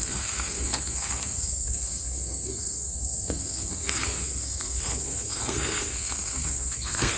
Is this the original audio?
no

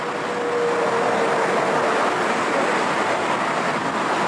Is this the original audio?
yes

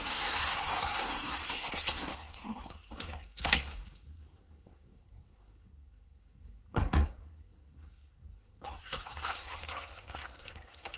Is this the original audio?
no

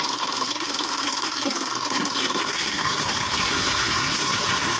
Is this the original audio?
no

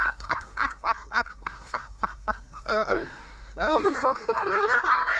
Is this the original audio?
no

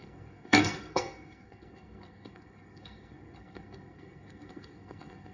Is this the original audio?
no